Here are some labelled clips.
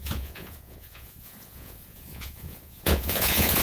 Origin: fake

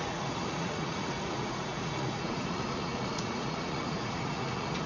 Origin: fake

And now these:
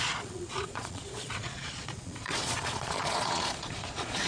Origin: fake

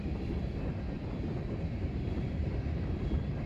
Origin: fake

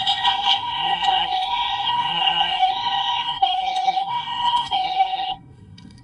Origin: fake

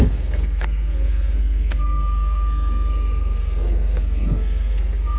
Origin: fake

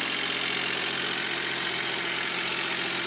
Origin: real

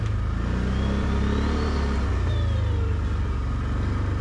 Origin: real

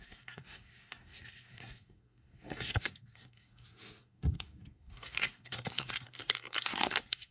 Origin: fake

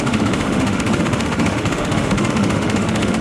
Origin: fake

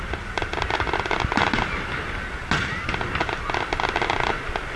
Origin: real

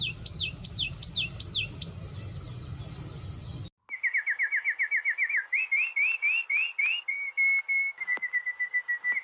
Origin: real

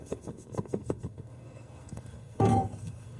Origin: fake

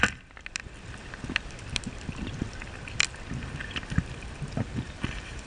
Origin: real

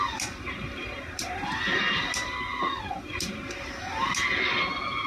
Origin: real